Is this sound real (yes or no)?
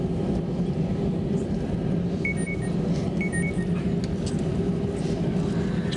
yes